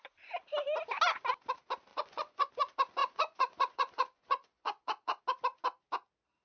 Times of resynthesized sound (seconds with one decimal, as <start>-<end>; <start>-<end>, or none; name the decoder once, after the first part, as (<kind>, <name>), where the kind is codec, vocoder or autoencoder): 1.9-2.5 (vocoder, Vocos); 3.0-5.2